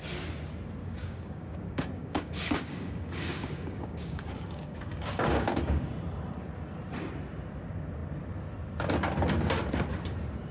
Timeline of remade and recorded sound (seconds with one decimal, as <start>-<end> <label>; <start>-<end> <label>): 0.0-0.8 recorded; 0.8-5.9 remade; 5.9-10.5 recorded